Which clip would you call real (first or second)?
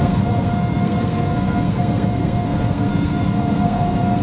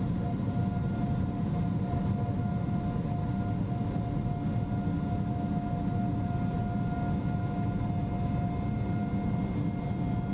second